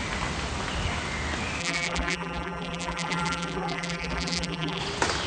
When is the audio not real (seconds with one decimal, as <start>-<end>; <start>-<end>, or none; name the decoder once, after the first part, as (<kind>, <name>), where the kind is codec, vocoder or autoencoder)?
1.6-4.8 (vocoder, BigVGAN v2)